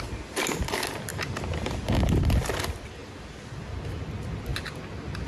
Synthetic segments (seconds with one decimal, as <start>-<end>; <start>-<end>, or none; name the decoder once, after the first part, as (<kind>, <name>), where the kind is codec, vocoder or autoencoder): none